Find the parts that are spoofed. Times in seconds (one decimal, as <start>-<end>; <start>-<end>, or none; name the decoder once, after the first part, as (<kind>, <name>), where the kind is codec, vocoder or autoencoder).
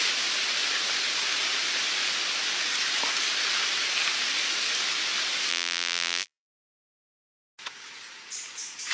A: 5.5-7.0 (vocoder, BigVGAN v2)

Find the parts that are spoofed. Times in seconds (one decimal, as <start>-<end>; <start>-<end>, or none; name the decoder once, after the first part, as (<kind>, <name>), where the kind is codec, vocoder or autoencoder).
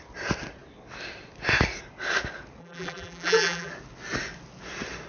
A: 2.6-3.7 (vocoder, BigVGAN v2)